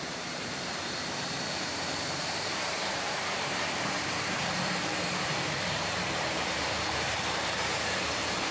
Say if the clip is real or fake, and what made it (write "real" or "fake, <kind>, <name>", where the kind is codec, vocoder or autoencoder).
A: fake, vocoder, BigVGAN v2